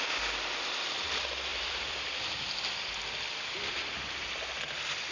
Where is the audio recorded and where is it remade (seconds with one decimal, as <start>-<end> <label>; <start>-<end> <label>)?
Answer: 0.0-1.5 recorded; 1.5-4.6 remade; 4.6-5.1 recorded